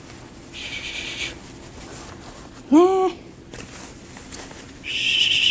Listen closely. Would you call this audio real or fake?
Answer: real